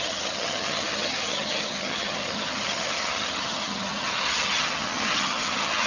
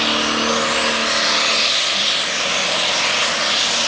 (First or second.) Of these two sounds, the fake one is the first